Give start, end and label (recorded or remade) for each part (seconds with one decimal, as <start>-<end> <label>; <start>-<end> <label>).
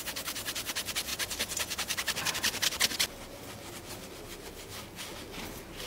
0.0-5.9 recorded